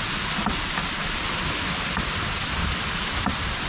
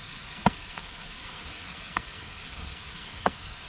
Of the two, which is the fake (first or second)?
second